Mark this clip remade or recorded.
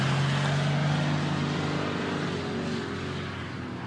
recorded